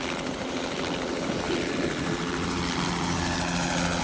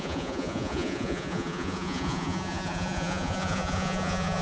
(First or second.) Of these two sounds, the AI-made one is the second